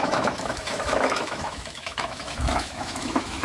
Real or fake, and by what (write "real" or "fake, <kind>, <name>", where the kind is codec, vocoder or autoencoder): fake, autoencoder, DAC-VAE